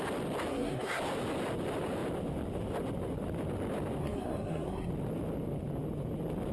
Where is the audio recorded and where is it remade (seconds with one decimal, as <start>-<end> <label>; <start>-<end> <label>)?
0.0-0.5 recorded; 0.5-1.0 remade; 1.0-4.0 recorded; 4.0-4.9 remade; 4.9-6.5 recorded